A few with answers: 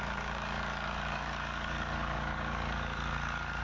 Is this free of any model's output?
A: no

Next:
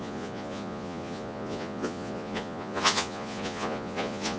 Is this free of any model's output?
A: no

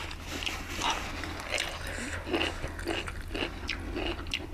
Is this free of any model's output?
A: yes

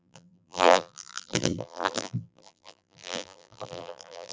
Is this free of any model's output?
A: no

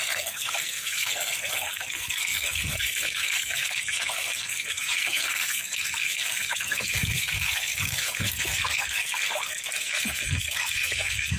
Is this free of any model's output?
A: no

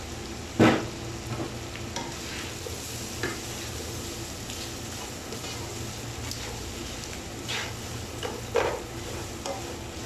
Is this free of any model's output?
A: yes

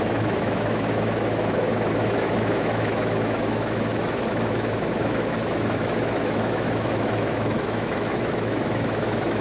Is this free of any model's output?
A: no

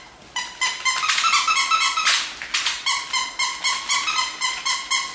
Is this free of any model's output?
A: yes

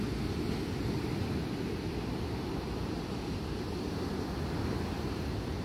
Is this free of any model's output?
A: yes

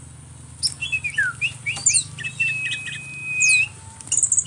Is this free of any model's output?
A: yes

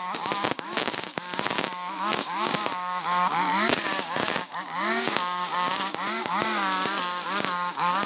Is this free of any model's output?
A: no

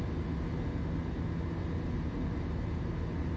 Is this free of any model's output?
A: yes